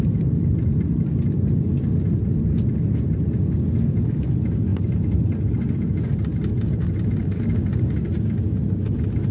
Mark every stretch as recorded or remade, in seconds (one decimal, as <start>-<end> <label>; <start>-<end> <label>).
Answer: 0.0-7.2 recorded; 7.2-7.9 remade; 7.9-9.3 recorded